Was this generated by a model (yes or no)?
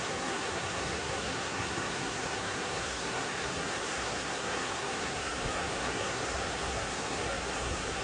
yes